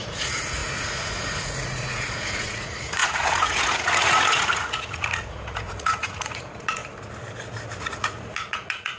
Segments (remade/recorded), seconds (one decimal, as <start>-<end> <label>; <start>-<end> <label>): 0.0-6.8 remade; 6.8-7.8 recorded; 7.8-9.0 remade